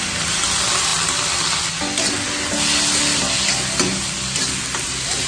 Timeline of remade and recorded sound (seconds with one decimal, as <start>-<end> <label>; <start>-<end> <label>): 0.0-5.3 recorded